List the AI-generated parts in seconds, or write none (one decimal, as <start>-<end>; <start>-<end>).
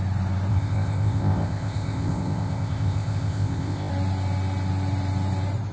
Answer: 0.5-3.9